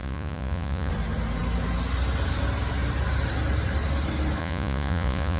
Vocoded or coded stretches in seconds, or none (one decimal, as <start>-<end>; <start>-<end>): 0.0-0.9; 4.4-5.4